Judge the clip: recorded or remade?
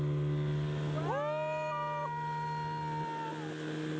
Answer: recorded